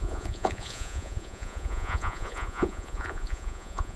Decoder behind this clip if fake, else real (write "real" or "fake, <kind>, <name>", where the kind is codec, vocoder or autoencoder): fake, vocoder, Vocos